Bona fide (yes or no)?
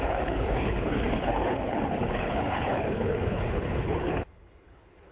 no